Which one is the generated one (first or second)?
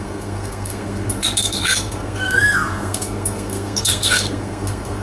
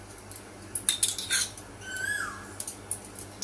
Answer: first